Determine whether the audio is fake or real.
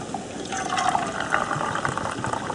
real